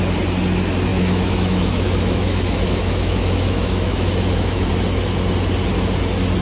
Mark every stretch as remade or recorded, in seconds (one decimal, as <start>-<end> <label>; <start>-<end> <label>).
0.0-0.9 recorded; 0.9-4.7 remade; 4.7-6.4 recorded